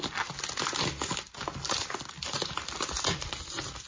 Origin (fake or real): real